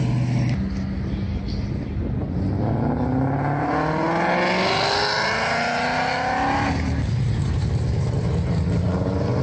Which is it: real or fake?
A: real